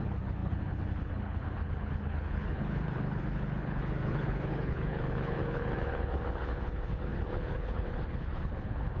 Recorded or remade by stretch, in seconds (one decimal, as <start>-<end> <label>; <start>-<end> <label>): 0.0-9.0 remade